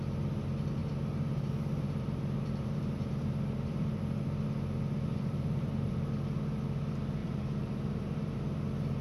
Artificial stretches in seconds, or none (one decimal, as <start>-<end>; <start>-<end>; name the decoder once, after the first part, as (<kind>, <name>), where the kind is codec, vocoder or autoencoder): 0.8-4.0 (vocoder, BigVGAN v2); 5.1-6.1; 7.2-8.4